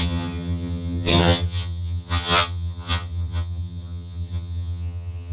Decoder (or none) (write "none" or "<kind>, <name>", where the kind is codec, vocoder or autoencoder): vocoder, HiFi-GAN